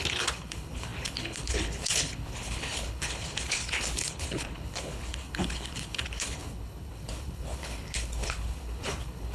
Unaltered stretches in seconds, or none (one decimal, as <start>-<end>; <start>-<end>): none